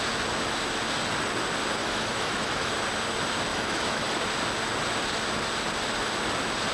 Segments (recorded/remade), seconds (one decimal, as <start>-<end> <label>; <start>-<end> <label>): 0.0-1.8 recorded; 1.8-2.7 remade; 2.7-3.5 recorded; 3.5-4.2 remade; 4.2-6.7 recorded